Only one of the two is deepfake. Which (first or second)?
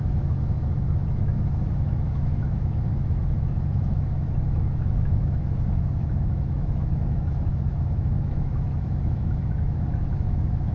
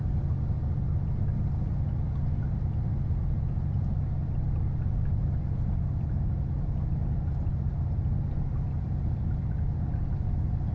first